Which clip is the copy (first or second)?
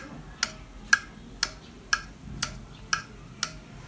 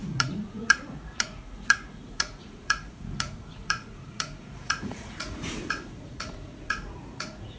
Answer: second